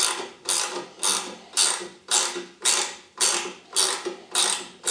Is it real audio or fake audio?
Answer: real